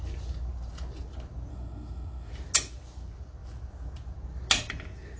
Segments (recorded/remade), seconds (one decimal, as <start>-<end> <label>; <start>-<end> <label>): 0.0-1.5 recorded; 1.5-2.3 remade; 2.3-5.2 recorded